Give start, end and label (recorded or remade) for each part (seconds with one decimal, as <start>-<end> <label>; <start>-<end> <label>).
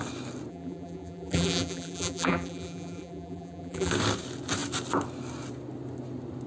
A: 0.0-0.5 recorded; 0.5-3.9 remade; 3.9-6.5 recorded